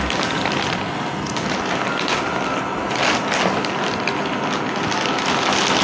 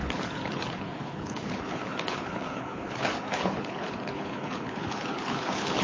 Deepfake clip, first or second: second